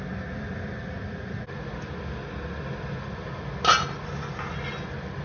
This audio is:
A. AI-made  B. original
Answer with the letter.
B